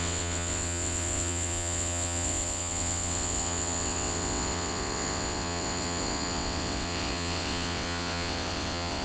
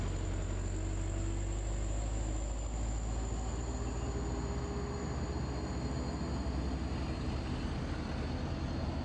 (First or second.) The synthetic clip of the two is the first